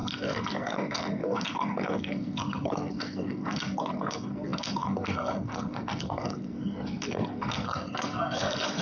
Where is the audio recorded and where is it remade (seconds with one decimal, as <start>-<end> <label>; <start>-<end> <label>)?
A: 0.0-8.8 remade